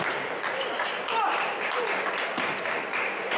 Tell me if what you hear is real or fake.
real